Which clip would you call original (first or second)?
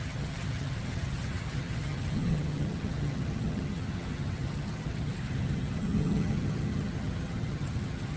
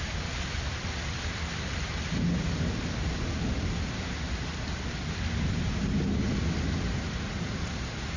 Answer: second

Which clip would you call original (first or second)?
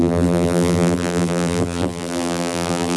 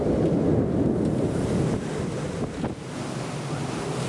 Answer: second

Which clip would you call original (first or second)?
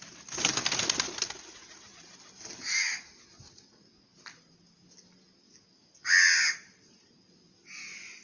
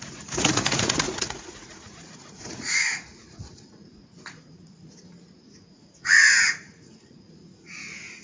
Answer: first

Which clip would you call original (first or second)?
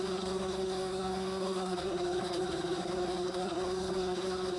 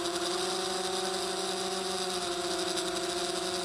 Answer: second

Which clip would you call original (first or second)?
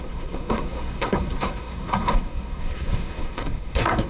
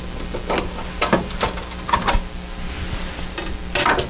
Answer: second